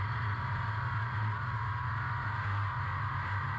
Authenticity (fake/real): real